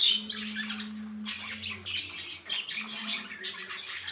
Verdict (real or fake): real